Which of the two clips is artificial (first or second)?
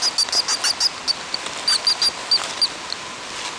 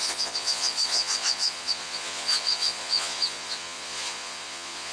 second